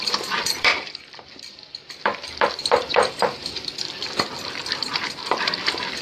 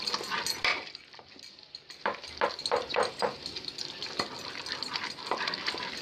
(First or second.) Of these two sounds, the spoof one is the first